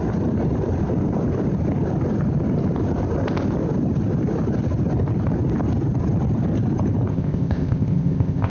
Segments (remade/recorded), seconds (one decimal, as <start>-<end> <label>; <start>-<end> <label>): 0.0-7.1 recorded; 7.1-8.5 remade